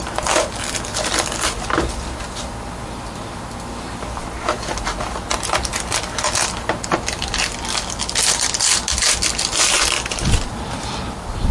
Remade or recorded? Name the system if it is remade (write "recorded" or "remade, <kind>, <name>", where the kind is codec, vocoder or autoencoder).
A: recorded